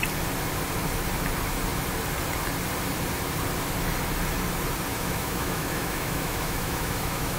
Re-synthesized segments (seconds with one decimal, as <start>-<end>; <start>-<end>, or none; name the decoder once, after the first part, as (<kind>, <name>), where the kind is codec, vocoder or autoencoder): 4.9-7.4 (autoencoder, DAC-VAE)